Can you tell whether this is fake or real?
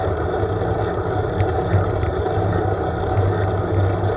real